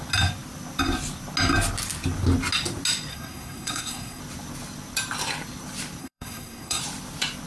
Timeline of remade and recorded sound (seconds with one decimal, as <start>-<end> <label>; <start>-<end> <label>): 0.0-3.1 recorded; 3.1-4.2 remade; 4.2-6.0 recorded; 6.0-6.8 remade; 6.8-7.5 recorded